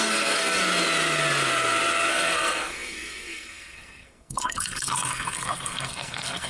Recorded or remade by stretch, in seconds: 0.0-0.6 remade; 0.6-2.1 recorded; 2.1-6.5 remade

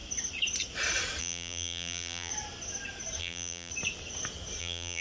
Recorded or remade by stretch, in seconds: 0.0-1.2 recorded; 1.2-2.3 remade; 2.3-3.2 recorded; 3.2-3.7 remade; 3.7-4.6 recorded; 4.6-5.0 remade

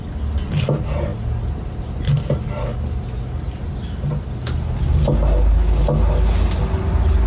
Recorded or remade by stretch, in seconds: 0.0-7.3 recorded

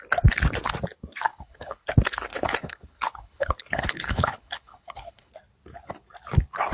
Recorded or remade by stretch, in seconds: 0.0-1.3 recorded; 1.3-1.9 remade; 1.9-2.3 recorded; 2.3-5.3 remade; 5.3-6.7 recorded

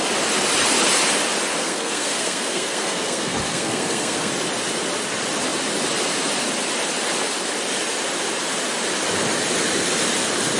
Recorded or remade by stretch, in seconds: 0.0-1.6 recorded; 1.6-4.3 remade; 4.3-10.6 recorded

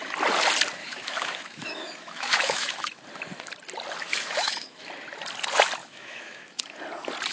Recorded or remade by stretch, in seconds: 0.0-0.8 recorded; 0.8-3.0 remade; 3.0-4.1 recorded; 4.1-4.9 remade; 4.9-5.8 recorded; 5.8-6.8 remade; 6.8-7.3 recorded

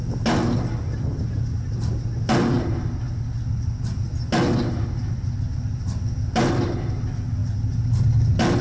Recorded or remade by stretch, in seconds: 0.0-8.6 recorded

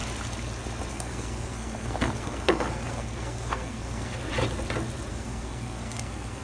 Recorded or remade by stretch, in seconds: 0.0-0.9 recorded; 0.9-4.2 remade; 4.2-5.1 recorded; 5.1-6.4 remade